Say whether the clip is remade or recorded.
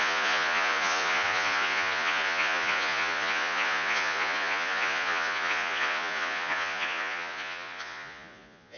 remade